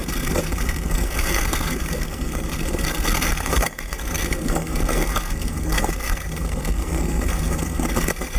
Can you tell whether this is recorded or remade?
remade